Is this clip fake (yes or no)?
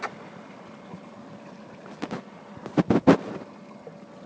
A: no